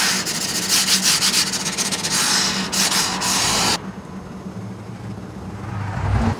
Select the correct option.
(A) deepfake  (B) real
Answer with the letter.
B